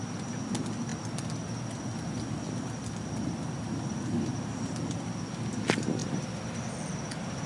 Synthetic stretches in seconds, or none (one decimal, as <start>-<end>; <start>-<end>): none